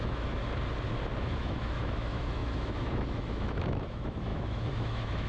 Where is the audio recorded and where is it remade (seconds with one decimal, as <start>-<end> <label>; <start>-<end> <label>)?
0.0-0.4 remade; 0.4-1.2 recorded; 1.2-5.3 remade